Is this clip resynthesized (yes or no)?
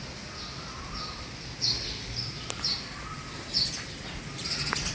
no